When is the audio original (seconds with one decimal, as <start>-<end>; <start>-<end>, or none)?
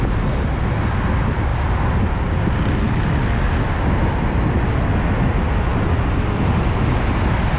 0.0-7.6